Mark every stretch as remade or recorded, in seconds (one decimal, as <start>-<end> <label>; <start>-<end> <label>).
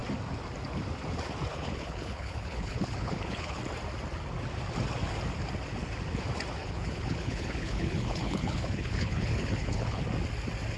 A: 0.0-1.5 recorded; 1.5-3.6 remade; 3.6-6.6 recorded; 6.6-10.0 remade; 10.0-10.8 recorded